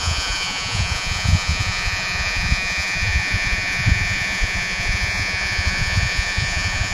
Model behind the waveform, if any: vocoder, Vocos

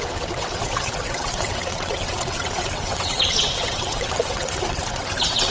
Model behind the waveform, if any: vocoder, WaveNeXt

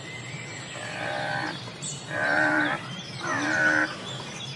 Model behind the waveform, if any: vocoder, BigVGAN v2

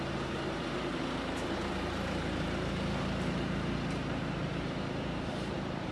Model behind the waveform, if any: vocoder, BigVGAN v2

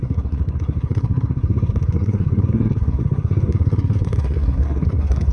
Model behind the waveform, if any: codec, SNAC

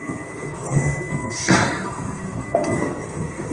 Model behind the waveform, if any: codec, SNAC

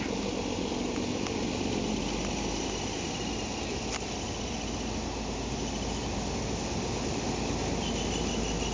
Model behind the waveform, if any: none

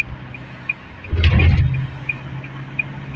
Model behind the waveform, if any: none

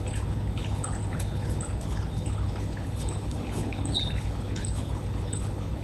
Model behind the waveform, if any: codec, HILCodec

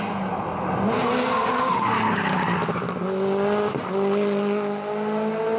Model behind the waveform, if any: none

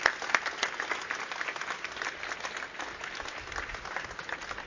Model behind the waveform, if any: none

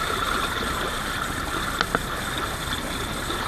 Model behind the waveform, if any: none